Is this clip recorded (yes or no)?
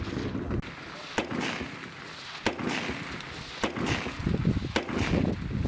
yes